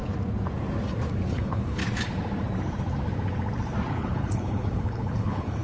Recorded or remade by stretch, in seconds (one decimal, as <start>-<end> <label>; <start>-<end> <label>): 0.0-1.3 recorded; 1.3-1.8 remade; 1.8-3.9 recorded; 3.9-5.6 remade